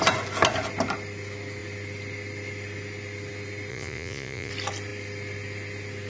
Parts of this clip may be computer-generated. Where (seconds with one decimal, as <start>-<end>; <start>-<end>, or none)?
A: 3.7-4.5